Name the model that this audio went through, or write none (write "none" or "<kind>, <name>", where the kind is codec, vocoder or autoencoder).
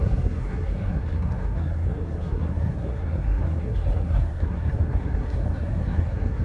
codec, SNAC